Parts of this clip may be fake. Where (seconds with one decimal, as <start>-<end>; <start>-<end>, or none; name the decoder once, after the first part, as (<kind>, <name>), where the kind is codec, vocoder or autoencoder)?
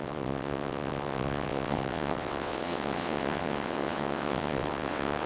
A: 0.0-5.3 (vocoder, WaveNeXt)